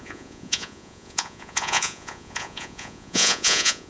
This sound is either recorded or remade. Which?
remade